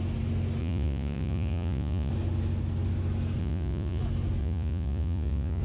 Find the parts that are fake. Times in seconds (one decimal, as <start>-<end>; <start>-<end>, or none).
0.6-2.1; 3.4-4.0; 4.4-5.6